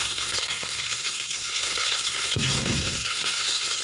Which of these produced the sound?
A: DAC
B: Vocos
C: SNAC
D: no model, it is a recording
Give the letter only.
C